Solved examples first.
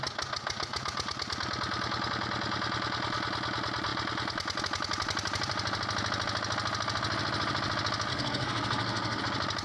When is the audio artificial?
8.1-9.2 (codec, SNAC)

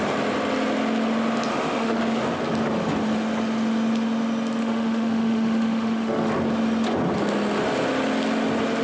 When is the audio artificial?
1.5-2.0 (autoencoder, DAC-VAE); 4.6-6.3

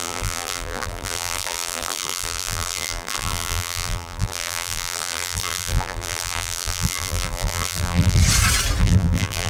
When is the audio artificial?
0.0-8.2 (vocoder, BigVGAN v2); 8.8-9.5

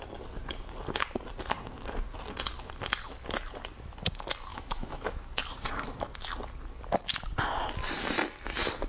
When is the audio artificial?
4.5-5.3 (autoencoder, DAC-VAE)

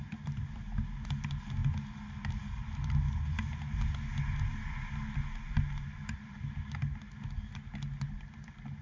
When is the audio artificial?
none